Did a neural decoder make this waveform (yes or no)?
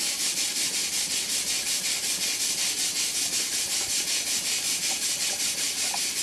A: no